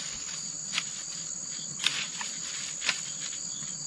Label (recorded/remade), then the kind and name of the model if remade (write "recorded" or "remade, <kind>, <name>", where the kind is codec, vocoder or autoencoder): recorded